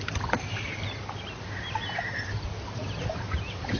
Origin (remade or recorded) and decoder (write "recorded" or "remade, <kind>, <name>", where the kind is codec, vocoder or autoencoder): recorded